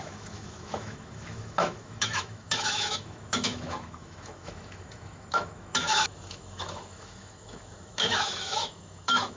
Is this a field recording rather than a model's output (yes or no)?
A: no